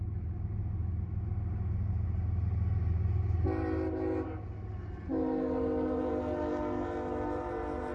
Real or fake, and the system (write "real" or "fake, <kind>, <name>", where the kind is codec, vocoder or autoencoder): real